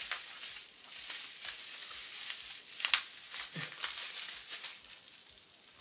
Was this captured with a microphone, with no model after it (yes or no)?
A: yes